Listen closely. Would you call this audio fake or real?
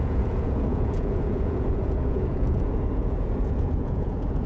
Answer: fake